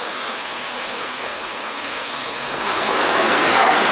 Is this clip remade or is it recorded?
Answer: remade